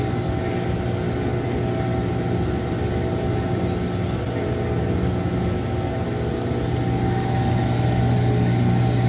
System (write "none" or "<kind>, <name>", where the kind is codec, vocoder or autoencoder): none